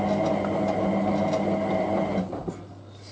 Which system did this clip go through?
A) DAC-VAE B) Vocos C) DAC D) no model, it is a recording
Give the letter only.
D